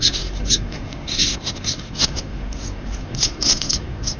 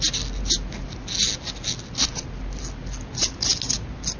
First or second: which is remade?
first